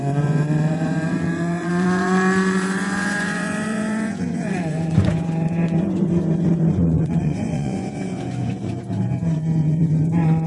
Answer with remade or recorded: remade